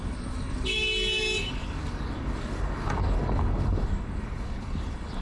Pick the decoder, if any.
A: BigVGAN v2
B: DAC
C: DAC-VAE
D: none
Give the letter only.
B